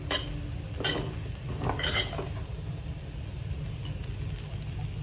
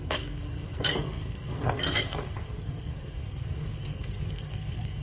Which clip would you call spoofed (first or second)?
second